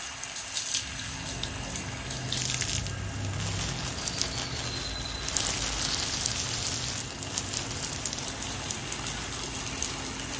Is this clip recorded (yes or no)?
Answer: yes